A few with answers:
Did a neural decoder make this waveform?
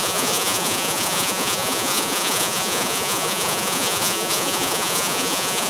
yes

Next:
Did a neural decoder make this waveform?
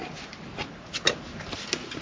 no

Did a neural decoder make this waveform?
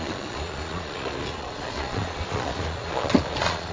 yes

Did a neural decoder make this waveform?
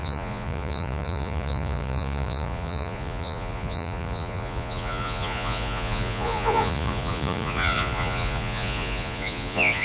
yes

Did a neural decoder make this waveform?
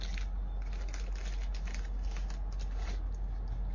no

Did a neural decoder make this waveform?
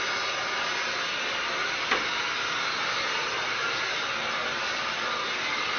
no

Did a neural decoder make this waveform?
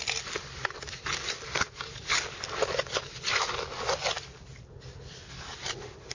no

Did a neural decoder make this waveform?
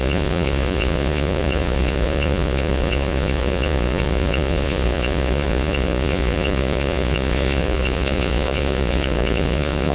yes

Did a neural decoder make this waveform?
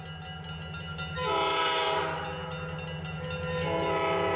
no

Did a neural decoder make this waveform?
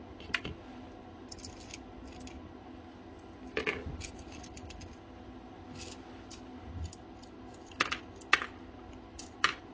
no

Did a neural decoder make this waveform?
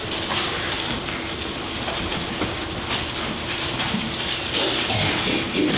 no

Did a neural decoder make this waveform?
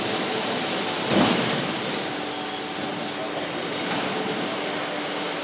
no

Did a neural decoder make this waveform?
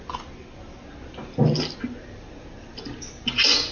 no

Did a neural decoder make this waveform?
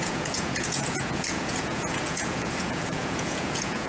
yes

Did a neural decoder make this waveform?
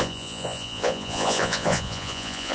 yes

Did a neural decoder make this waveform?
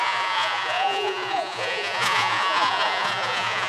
yes